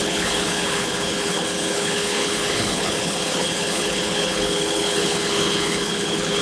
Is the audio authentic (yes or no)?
no